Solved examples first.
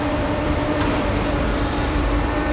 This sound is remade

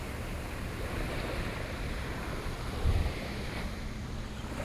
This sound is remade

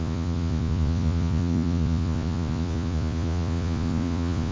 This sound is remade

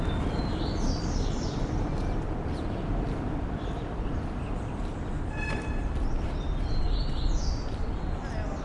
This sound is recorded